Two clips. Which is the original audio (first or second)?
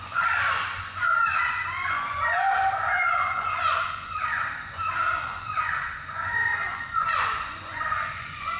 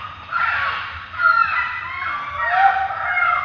second